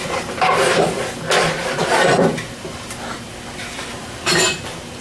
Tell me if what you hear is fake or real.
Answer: real